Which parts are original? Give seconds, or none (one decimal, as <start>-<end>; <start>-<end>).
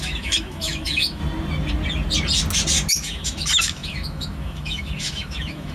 1.2-2.9